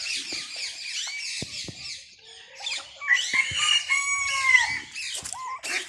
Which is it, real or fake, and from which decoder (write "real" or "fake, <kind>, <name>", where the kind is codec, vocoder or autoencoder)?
real